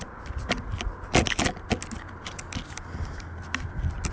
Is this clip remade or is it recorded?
recorded